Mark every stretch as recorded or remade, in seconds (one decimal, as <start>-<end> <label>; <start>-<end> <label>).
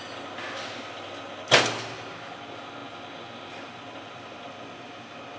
0.0-5.4 recorded